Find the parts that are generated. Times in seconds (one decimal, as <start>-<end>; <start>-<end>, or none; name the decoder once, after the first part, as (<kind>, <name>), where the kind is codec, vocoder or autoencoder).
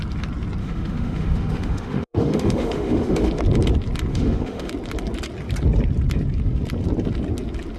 0.6-3.3 (autoencoder, DAC-VAE); 4.1-4.7